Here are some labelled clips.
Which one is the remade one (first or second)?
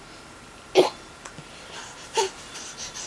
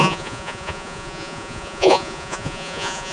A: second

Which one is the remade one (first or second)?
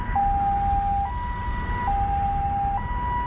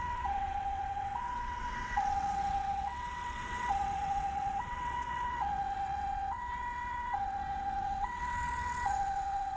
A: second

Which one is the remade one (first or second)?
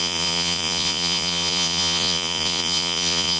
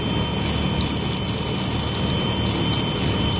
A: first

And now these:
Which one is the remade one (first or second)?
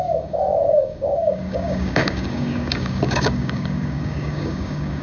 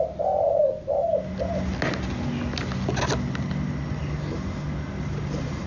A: first